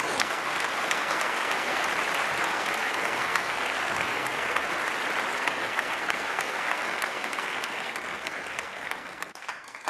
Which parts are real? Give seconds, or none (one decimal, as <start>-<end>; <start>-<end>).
1.8-2.4; 4.8-5.3